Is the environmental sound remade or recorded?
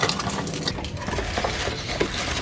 recorded